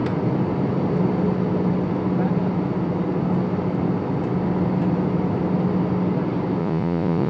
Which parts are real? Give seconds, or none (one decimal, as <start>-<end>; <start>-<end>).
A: 0.0-6.6